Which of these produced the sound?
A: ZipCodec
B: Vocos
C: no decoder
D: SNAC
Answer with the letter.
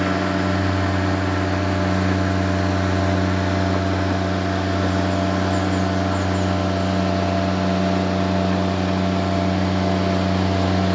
C